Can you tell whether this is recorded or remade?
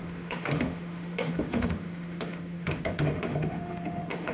remade